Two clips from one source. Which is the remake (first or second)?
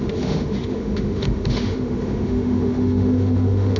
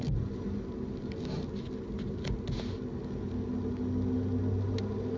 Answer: first